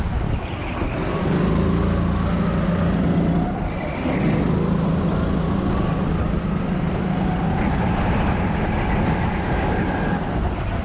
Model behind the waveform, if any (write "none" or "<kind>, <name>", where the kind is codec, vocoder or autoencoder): none